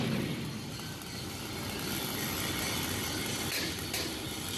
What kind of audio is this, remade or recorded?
recorded